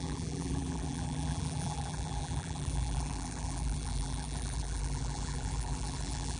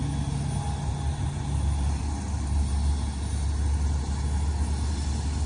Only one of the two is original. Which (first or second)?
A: second